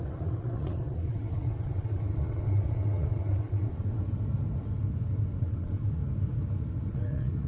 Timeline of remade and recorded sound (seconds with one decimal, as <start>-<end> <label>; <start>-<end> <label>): 0.0-4.0 remade; 4.0-5.4 recorded; 5.4-6.0 remade; 6.0-6.9 recorded; 6.9-7.5 remade